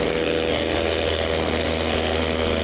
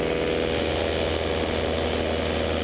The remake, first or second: first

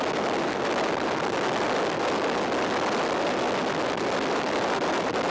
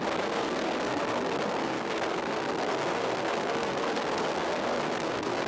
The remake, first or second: second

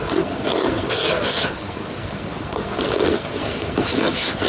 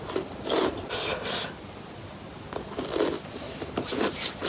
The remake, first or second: first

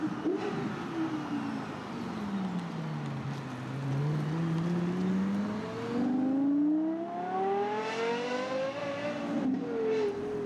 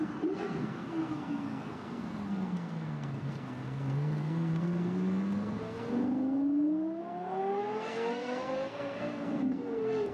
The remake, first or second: second